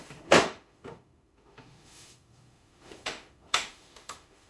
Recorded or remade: remade